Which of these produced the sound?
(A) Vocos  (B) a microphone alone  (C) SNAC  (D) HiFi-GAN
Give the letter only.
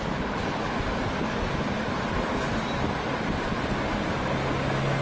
B